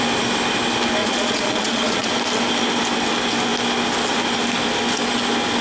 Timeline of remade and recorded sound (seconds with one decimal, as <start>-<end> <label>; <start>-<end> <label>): 0.0-1.0 recorded; 1.0-2.1 remade; 2.1-5.6 recorded